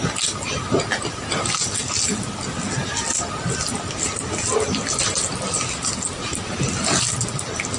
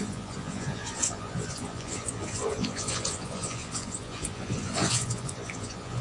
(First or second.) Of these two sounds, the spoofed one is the second